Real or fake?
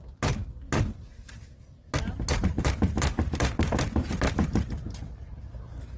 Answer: real